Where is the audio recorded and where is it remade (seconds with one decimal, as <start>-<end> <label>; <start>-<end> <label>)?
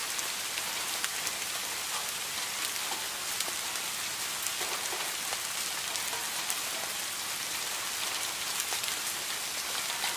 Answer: 0.0-10.2 recorded